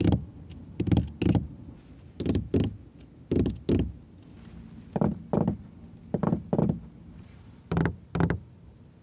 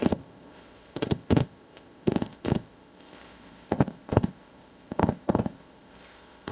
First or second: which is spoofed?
second